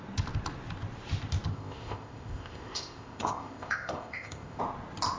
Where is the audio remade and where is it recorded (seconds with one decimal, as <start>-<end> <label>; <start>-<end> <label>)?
0.0-1.5 recorded; 1.5-4.6 remade; 4.6-5.2 recorded